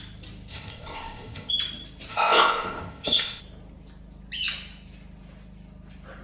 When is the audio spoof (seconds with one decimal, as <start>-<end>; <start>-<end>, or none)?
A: 0.5-1.5; 2.1-3.4